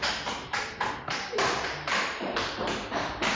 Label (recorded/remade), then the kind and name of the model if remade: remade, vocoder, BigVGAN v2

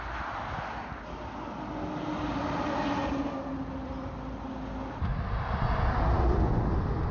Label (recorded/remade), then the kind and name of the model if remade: recorded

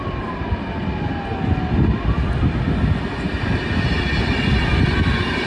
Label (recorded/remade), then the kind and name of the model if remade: recorded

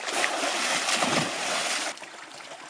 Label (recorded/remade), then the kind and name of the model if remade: recorded